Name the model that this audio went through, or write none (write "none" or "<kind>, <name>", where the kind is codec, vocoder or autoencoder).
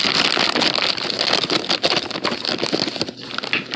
none